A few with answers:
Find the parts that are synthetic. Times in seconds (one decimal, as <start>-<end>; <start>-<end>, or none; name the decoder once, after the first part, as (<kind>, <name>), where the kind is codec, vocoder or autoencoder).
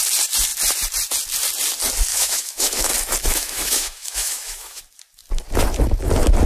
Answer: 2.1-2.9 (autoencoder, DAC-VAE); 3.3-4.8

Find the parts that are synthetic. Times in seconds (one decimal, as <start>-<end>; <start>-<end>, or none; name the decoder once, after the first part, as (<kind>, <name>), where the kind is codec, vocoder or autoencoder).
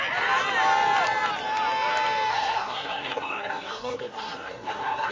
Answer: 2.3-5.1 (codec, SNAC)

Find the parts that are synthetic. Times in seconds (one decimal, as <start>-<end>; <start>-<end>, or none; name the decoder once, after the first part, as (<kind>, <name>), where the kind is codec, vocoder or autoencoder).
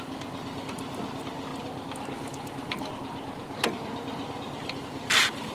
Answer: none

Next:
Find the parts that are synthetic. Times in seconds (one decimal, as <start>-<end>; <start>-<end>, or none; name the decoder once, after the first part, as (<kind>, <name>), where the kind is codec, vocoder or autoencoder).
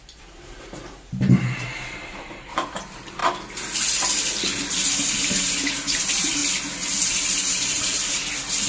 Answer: 0.0-3.2 (vocoder, BigVGAN v2); 4.7-6.4; 7.0-8.7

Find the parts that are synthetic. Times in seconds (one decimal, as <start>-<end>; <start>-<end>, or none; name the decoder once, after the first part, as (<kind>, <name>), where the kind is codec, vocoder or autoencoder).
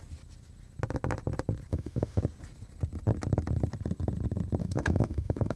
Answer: 1.7-2.2 (autoencoder, DAC-VAE); 4.6-5.6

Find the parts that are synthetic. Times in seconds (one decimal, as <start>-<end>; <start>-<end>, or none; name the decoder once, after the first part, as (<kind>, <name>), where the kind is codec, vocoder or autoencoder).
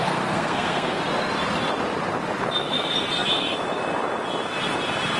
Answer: 0.0-1.0 (codec, SNAC)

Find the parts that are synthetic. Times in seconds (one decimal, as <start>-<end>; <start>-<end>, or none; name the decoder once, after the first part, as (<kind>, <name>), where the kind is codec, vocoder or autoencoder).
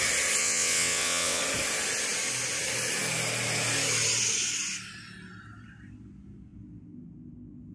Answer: 0.4-1.4 (vocoder, WaveNeXt)